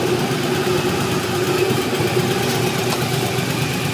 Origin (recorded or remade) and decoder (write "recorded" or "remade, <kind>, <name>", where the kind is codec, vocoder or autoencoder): recorded